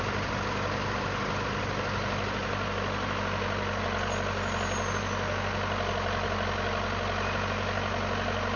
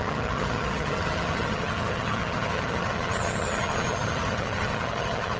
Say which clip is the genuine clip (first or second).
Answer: first